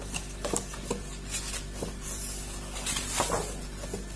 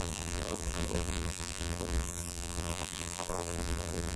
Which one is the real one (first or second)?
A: first